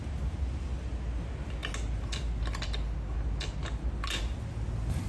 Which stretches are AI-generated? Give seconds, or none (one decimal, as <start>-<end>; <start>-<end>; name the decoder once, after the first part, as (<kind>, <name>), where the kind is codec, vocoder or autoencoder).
none